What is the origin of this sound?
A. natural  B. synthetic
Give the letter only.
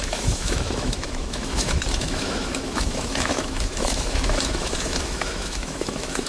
B